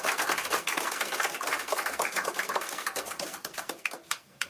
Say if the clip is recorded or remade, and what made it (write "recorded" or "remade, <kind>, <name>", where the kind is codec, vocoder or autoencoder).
remade, codec, SNAC